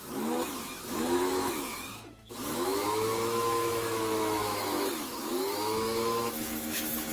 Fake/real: fake